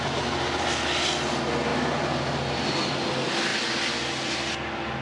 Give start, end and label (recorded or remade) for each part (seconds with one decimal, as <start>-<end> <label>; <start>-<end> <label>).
0.0-5.0 recorded